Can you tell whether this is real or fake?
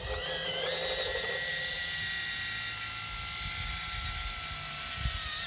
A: real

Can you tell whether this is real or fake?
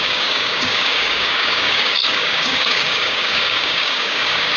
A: fake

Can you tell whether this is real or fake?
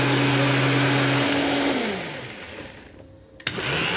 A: real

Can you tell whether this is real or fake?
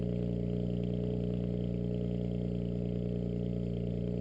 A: real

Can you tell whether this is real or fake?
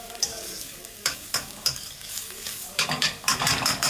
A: fake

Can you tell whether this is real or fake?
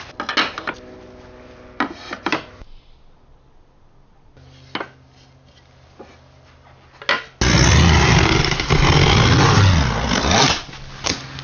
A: real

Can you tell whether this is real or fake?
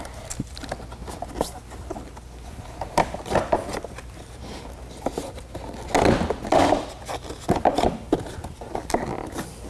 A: real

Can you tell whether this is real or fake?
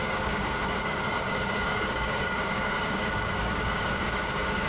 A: fake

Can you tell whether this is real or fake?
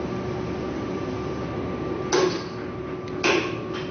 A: real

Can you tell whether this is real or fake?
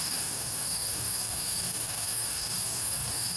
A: fake